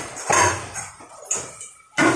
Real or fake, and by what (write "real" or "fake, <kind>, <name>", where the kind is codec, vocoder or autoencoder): real